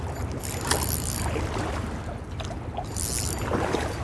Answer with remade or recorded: recorded